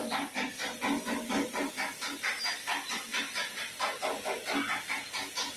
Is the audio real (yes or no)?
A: yes